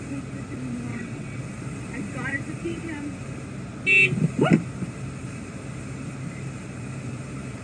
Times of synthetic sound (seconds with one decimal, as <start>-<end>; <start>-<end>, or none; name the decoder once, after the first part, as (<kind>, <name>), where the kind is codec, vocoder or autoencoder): 0.9-1.4 (vocoder, WaveNeXt)